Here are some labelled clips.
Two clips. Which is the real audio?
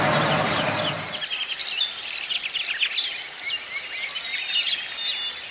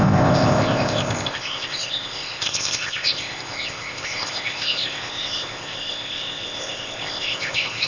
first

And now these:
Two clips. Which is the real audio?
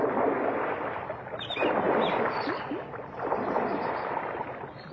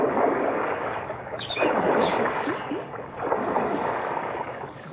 first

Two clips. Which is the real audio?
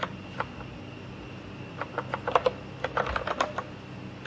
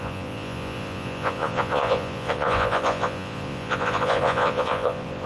first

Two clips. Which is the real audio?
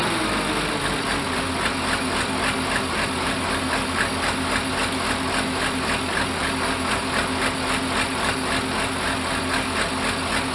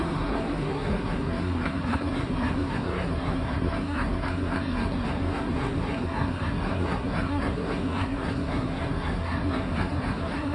first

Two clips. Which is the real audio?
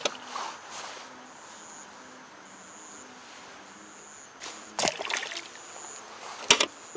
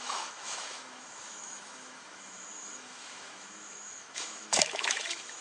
first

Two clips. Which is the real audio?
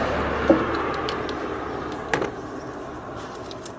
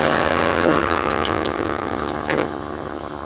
first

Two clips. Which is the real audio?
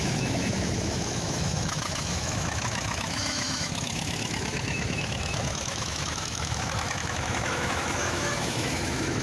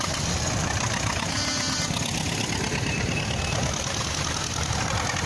second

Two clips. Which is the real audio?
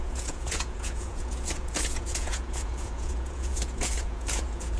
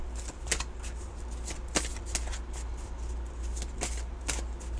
second